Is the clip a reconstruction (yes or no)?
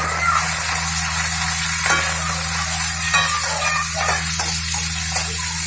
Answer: no